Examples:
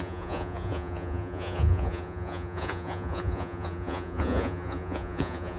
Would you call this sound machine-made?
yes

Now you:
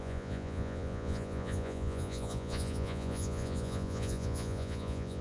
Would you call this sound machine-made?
yes